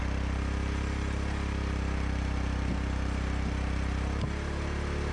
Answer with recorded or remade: recorded